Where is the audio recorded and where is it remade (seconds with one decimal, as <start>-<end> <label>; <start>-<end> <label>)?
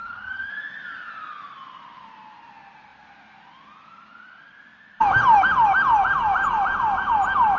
0.0-0.5 remade; 0.5-7.6 recorded